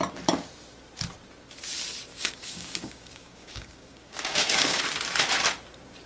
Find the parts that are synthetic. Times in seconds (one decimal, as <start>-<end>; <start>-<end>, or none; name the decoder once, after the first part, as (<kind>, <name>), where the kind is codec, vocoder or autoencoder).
2.1-4.8 (codec, DAC)